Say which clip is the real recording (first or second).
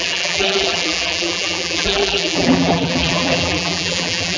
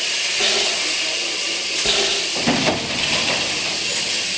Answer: second